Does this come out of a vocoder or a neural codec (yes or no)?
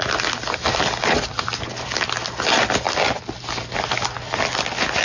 no